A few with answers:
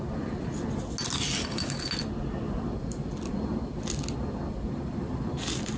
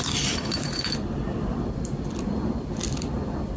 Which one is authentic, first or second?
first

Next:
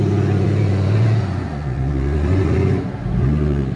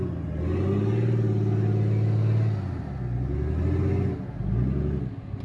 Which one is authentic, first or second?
second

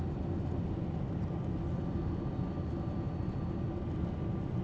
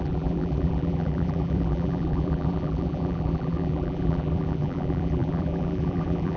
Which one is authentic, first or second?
first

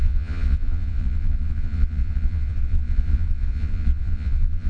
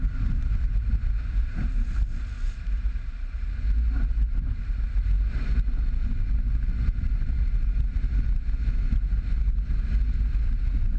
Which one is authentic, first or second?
second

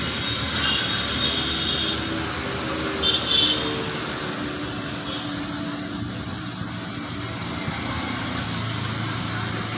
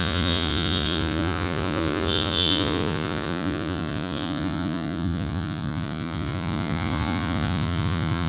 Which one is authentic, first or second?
first